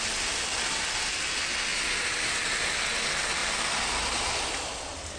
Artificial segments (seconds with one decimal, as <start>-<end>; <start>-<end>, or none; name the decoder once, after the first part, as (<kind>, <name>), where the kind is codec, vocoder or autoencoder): none

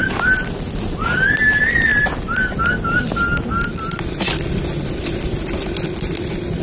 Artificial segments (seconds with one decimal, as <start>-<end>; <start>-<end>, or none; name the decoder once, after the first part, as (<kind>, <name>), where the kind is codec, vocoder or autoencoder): none